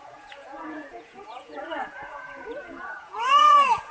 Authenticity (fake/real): fake